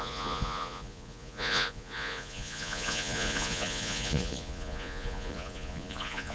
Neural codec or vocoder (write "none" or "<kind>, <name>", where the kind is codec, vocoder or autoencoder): vocoder, Vocos